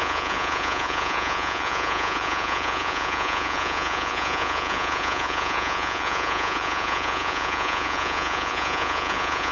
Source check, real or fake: fake